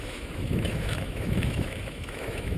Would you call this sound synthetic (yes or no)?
yes